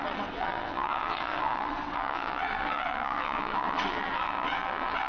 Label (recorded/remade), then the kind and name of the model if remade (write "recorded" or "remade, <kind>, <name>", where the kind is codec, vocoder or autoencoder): remade, vocoder, WaveNeXt